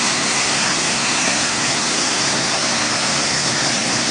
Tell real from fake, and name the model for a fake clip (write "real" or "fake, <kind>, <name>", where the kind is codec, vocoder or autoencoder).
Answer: fake, codec, SNAC